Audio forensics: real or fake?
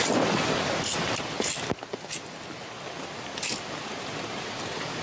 real